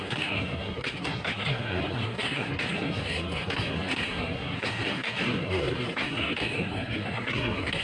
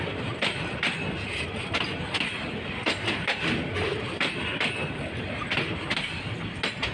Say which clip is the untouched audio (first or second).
second